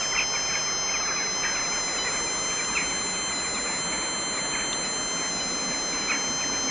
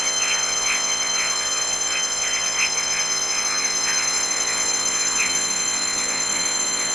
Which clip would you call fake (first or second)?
second